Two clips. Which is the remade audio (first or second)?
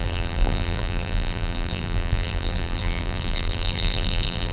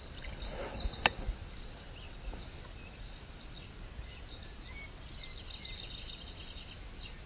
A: first